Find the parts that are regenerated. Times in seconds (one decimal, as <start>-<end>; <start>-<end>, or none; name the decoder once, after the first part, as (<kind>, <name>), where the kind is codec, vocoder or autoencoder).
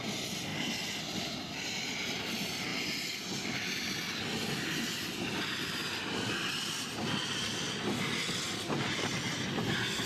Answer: none